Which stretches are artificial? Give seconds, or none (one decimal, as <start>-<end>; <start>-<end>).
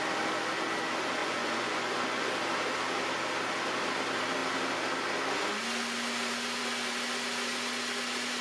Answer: 1.2-2.3